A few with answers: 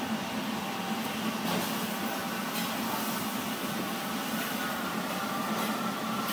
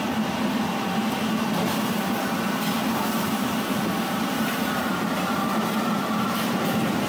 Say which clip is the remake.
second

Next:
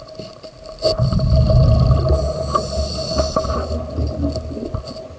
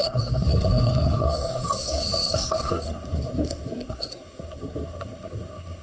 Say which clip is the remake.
second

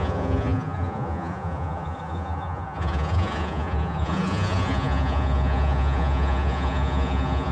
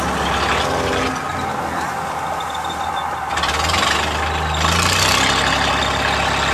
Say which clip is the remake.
first